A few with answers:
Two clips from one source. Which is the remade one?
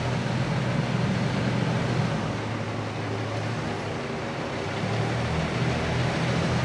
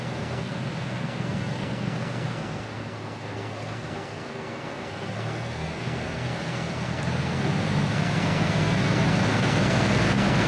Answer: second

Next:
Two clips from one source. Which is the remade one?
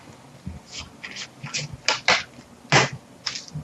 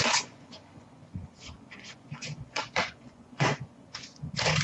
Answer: second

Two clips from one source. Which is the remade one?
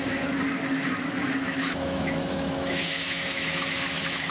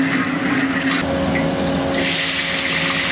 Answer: first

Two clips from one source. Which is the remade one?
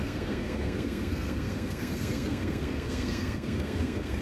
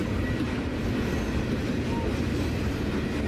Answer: first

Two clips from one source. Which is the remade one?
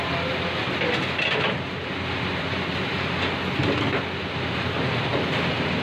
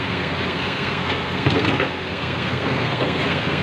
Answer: second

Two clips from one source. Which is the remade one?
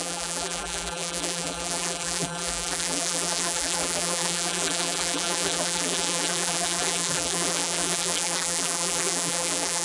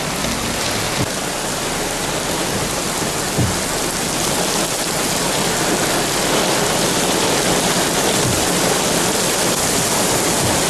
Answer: first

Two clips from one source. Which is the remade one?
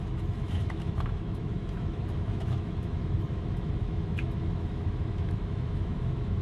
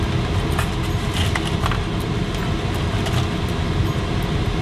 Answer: first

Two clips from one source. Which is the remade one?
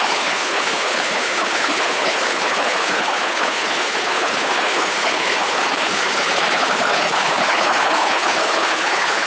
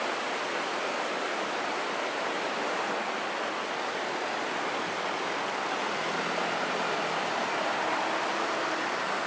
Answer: first